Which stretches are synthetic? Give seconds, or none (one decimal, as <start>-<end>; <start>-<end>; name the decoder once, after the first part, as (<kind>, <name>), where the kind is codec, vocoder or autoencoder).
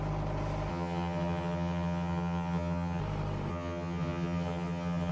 0.7-3.0 (vocoder, HiFi-GAN); 3.5-5.1